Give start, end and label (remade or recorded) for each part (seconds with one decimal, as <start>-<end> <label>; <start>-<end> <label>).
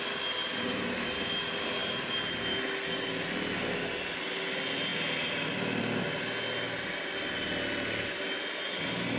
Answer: 0.0-1.8 recorded; 1.8-2.4 remade; 2.4-9.2 recorded